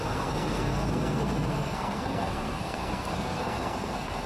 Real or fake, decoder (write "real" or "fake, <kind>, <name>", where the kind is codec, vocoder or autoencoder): fake, codec, SNAC